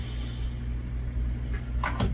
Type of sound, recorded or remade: recorded